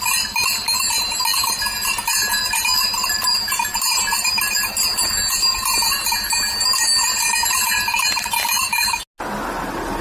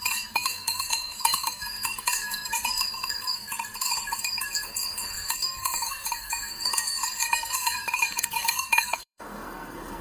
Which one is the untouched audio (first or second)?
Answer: first